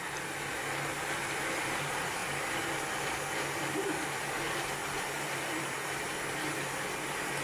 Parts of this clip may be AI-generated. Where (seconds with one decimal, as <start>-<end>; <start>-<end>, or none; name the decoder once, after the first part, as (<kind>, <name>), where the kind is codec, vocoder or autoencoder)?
4.8-5.6 (vocoder, BigVGAN v2)